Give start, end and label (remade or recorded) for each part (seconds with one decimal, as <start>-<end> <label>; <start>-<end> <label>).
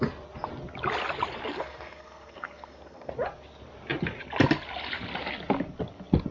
0.0-1.5 recorded; 1.5-3.1 remade; 3.1-6.3 recorded